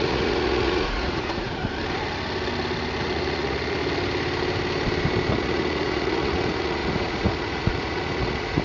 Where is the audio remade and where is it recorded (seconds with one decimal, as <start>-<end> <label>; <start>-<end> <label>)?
0.0-1.6 remade; 1.6-3.0 recorded; 3.0-3.8 remade; 3.8-5.3 recorded; 5.3-8.6 remade